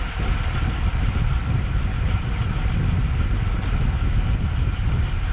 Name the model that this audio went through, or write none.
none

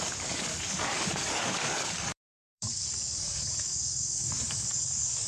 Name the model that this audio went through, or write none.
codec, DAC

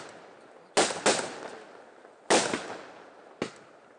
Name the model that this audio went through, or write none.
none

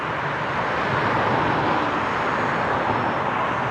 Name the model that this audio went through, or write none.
none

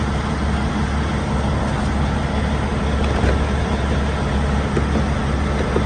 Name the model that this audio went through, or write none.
none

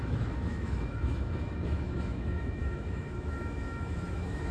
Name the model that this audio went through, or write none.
autoencoder, DAC-VAE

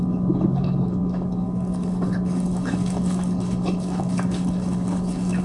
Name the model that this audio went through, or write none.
codec, DAC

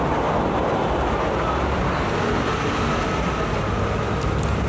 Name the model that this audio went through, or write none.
none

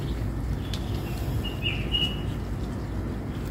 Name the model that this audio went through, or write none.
none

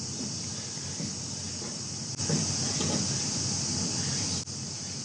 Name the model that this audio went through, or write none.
none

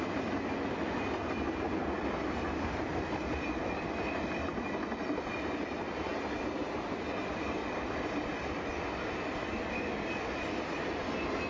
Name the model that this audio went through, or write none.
none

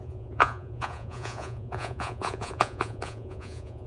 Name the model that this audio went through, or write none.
vocoder, Vocos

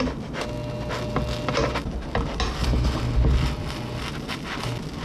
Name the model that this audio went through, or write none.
none